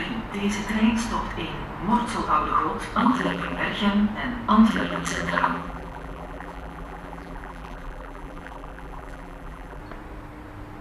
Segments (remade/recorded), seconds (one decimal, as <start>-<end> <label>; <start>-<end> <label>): 0.0-3.0 recorded; 3.0-3.6 remade; 3.6-4.7 recorded; 4.7-9.8 remade; 9.8-10.8 recorded